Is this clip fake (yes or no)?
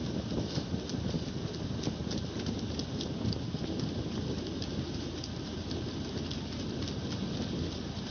no